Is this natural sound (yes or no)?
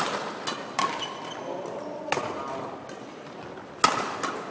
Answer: yes